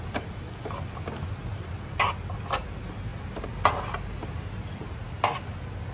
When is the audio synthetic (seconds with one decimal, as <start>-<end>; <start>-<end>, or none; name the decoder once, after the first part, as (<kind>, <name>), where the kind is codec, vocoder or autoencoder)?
none